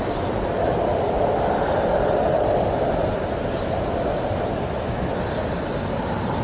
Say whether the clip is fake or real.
real